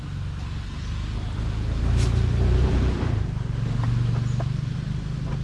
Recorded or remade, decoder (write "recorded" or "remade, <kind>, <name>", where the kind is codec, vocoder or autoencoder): recorded